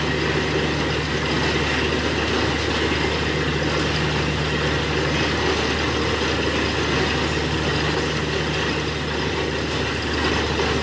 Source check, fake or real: real